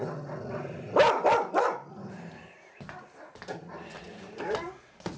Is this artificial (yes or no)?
no